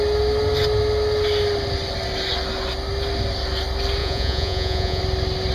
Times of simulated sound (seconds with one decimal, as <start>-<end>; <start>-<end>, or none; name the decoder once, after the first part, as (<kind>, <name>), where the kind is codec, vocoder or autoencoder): 4.0-5.0 (vocoder, Vocos)